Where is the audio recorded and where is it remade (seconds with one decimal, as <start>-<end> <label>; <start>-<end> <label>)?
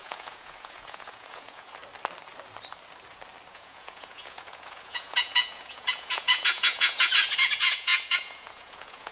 0.0-1.8 remade; 1.8-3.5 recorded; 3.5-9.1 remade